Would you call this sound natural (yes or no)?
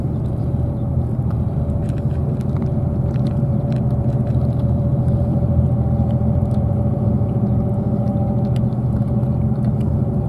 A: no